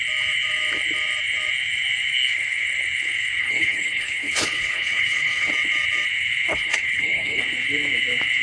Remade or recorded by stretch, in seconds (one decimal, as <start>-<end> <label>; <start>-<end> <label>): 0.0-3.4 recorded; 3.4-5.5 remade; 5.5-6.5 recorded; 6.5-7.4 remade; 7.4-8.4 recorded